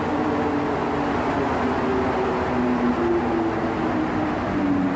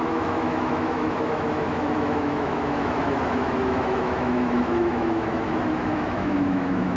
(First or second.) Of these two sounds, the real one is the first